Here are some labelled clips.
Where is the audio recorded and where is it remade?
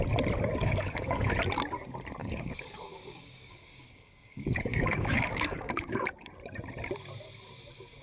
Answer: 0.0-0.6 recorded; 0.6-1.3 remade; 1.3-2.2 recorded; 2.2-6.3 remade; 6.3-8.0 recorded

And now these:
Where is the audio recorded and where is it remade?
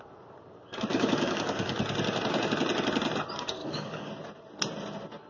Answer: 0.0-0.9 recorded; 0.9-1.8 remade; 1.8-3.6 recorded; 3.6-4.1 remade; 4.1-5.3 recorded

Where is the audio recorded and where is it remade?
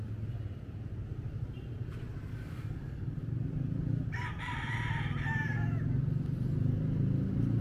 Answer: 0.0-2.3 recorded; 2.3-3.2 remade; 3.2-7.6 recorded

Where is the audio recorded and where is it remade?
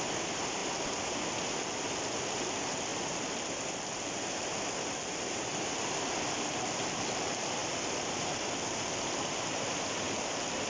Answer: 0.0-10.7 recorded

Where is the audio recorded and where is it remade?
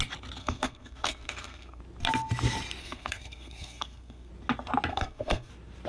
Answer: 0.0-0.4 recorded; 0.4-1.8 remade; 1.8-2.8 recorded; 2.8-4.3 remade; 4.3-4.9 recorded; 4.9-5.5 remade; 5.5-5.9 recorded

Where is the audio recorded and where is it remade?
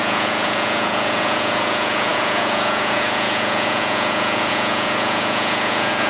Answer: 0.0-6.1 remade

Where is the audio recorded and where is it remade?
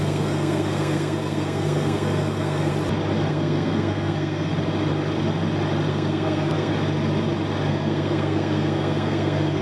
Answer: 0.0-2.7 remade; 2.7-3.3 recorded; 3.3-4.5 remade; 4.5-5.9 recorded; 5.9-6.7 remade; 6.7-7.7 recorded; 7.7-9.6 remade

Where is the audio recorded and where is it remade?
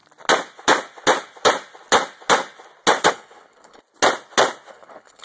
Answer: 0.0-3.1 recorded; 3.1-3.8 remade; 3.8-4.7 recorded; 4.7-5.2 remade